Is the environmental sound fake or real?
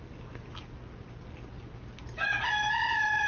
real